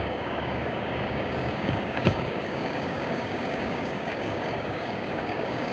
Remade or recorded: remade